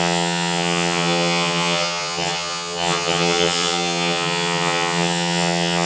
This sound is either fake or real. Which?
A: fake